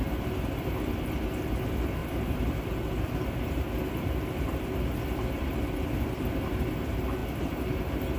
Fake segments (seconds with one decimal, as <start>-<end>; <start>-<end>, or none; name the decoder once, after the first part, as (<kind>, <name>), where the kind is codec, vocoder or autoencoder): 2.0-6.4 (vocoder, BigVGAN v2)